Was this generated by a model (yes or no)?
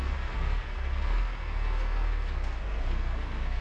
yes